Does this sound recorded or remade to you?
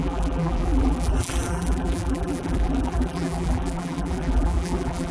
remade